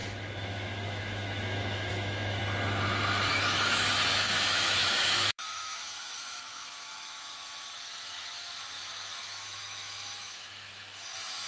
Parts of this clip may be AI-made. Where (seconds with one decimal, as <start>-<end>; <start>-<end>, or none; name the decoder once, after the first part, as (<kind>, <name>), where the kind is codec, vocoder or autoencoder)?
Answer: 0.0-2.4 (autoencoder, DAC-VAE); 3.3-11.5